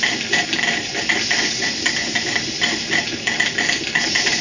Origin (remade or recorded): recorded